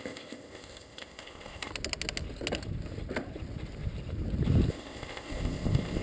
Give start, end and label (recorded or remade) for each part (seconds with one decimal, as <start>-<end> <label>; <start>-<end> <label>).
0.0-1.7 remade; 1.7-4.7 recorded; 4.7-6.0 remade